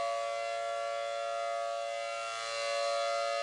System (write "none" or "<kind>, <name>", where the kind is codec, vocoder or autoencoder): none